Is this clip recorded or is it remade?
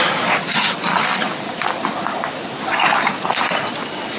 recorded